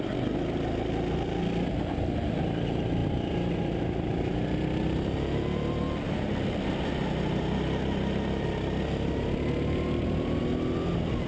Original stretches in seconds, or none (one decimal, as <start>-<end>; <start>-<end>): 0.0-11.3